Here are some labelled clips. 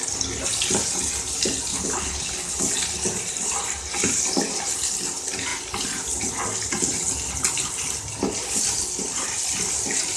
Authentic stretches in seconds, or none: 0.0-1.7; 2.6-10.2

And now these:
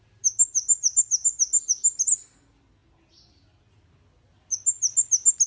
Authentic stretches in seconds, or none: 0.0-5.5

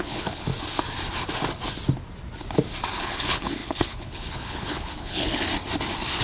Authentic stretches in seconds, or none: 0.5-2.9; 5.5-6.2

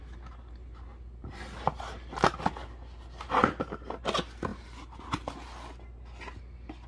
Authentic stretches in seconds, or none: 0.0-6.9